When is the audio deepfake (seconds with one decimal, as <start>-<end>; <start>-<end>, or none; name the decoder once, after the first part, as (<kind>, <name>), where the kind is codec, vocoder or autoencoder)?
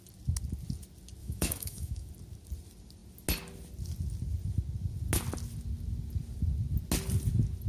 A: 1.2-2.1 (autoencoder, DAC-VAE)